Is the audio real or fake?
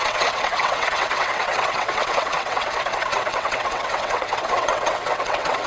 fake